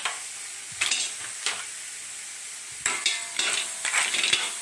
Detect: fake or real real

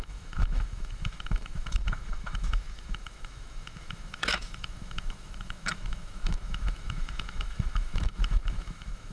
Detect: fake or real fake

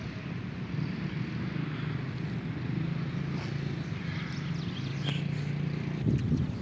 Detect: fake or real real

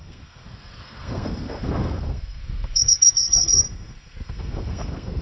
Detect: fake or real fake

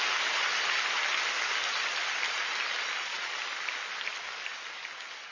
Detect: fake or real real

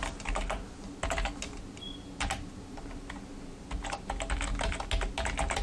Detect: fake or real real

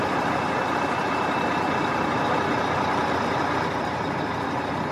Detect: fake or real fake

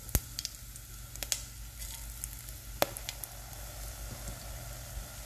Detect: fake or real real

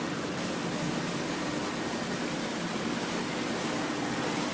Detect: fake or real real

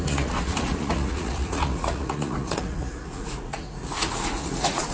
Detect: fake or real fake